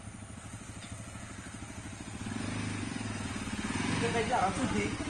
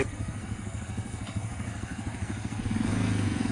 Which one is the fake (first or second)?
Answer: second